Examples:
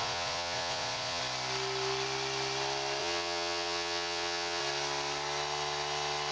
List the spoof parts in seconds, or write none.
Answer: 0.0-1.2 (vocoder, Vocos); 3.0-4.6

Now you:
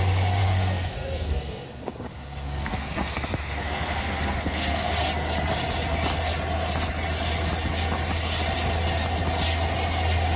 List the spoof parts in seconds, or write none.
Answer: 0.4-4.9 (codec, SNAC)

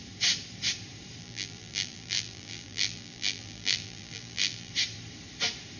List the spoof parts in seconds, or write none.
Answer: 1.2-4.7 (vocoder, BigVGAN v2)

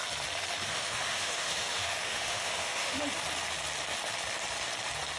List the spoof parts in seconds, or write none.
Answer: 0.7-3.0 (autoencoder, DAC-VAE)

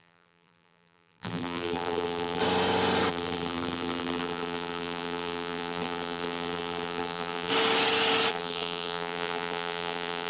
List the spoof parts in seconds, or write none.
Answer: 0.0-2.4 (vocoder, BigVGAN v2); 3.1-7.5; 8.3-10.3

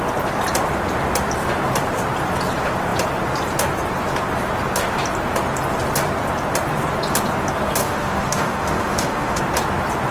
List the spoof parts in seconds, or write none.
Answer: 7.8-9.4 (autoencoder, DAC-VAE)

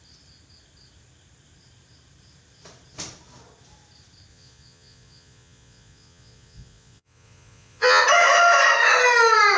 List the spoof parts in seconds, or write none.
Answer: 4.3-8.0 (vocoder, Vocos)

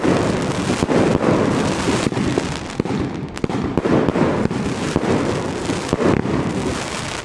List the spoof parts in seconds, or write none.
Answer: none